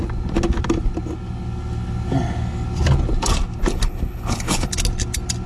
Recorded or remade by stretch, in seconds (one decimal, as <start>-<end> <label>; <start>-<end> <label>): 0.0-3.6 recorded; 3.6-4.7 remade; 4.7-5.5 recorded